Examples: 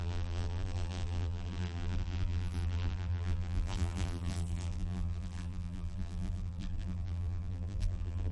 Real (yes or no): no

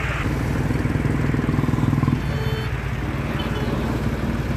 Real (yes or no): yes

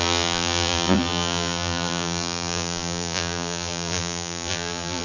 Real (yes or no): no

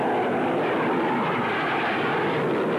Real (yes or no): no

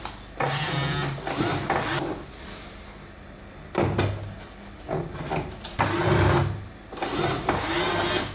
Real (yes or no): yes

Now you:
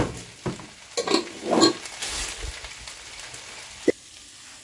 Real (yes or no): yes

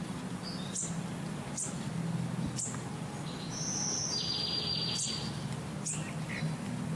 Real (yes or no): yes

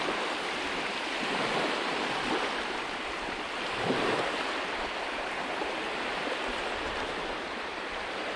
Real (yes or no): no